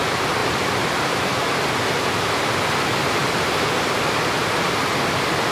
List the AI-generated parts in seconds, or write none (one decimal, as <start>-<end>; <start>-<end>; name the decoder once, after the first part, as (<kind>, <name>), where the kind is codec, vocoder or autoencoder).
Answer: none